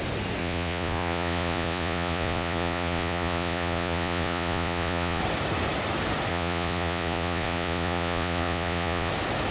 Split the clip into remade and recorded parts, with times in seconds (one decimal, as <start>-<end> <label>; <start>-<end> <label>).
0.0-0.4 recorded; 0.4-5.2 remade; 5.2-6.3 recorded; 6.3-9.1 remade; 9.1-9.5 recorded